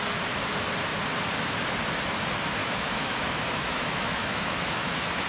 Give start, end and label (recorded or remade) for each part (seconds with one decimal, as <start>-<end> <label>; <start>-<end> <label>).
0.0-2.6 recorded; 2.6-5.3 remade